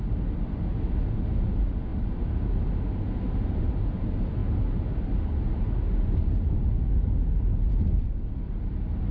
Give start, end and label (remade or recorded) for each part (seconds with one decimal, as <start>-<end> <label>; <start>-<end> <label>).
0.0-1.9 recorded; 1.9-2.7 remade; 2.7-9.1 recorded